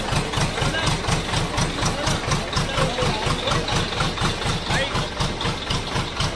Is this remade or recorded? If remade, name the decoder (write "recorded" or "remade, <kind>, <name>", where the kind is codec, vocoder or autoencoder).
recorded